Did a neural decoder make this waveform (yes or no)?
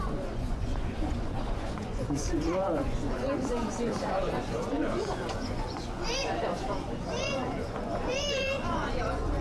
yes